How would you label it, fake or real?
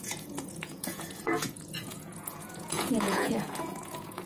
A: fake